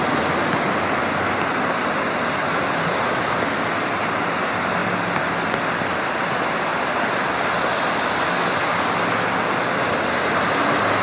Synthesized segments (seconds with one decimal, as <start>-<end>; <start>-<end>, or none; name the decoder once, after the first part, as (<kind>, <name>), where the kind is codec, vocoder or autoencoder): none